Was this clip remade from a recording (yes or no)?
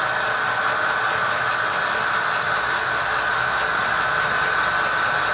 no